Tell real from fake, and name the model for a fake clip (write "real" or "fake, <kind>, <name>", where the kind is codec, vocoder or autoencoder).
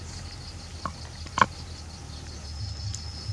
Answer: real